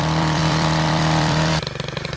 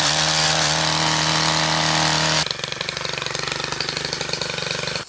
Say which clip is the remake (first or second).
first